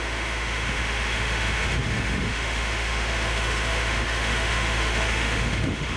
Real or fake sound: fake